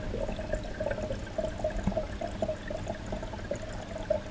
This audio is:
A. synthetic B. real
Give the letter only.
B